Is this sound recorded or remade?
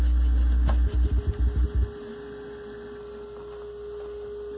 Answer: recorded